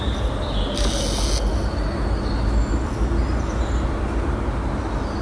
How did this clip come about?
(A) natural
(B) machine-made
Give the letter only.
A